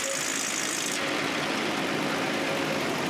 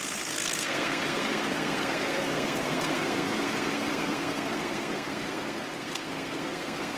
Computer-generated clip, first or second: second